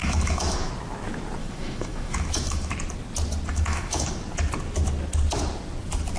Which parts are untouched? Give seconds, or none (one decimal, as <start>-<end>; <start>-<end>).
0.7-1.4; 2.7-3.5; 4.1-6.2